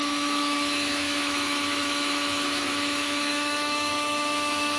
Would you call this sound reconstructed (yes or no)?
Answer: yes